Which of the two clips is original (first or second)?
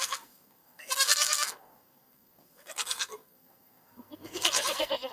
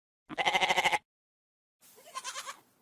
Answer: second